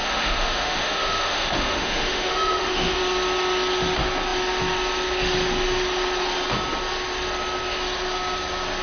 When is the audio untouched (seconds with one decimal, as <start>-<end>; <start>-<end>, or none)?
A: 3.0-8.8